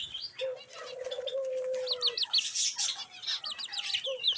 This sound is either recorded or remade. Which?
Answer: recorded